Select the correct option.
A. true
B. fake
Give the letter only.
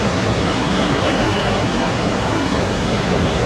B